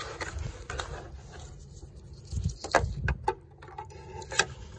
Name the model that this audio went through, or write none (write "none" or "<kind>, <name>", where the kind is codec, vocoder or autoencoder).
none